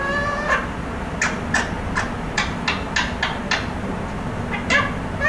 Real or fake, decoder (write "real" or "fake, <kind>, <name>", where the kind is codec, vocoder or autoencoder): real